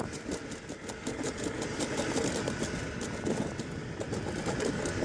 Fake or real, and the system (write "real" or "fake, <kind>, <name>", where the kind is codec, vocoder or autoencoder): real